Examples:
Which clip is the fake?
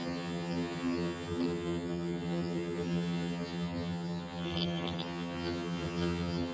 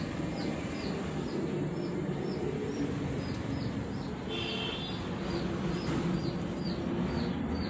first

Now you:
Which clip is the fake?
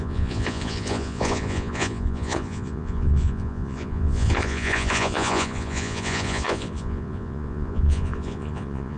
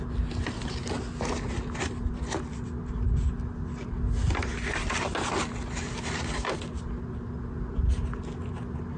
first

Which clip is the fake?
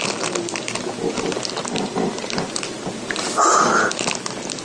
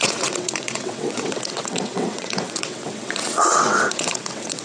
second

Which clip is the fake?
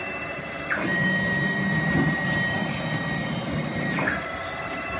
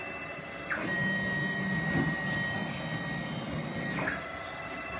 first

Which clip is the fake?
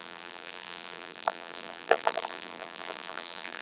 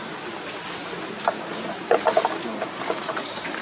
first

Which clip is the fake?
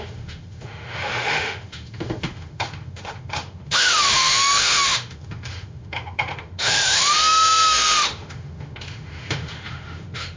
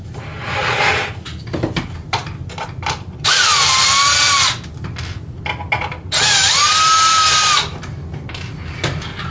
first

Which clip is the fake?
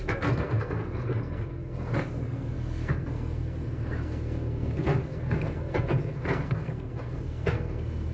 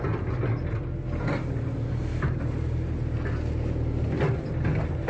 first